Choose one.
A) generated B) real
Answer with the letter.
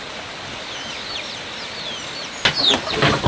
B